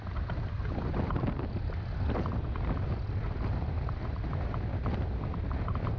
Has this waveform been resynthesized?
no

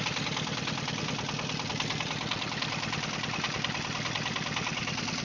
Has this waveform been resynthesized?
no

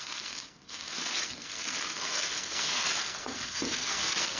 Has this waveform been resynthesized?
yes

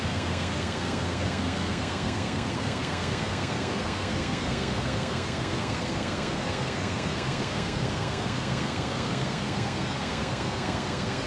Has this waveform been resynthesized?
yes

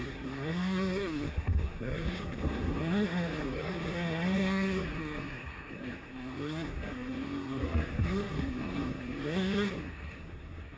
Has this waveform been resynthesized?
yes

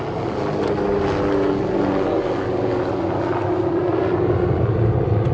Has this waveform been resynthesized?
no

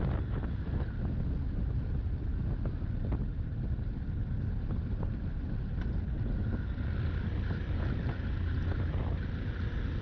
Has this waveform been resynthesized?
no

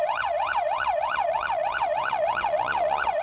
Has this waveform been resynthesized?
yes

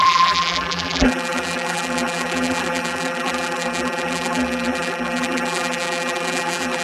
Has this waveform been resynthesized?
yes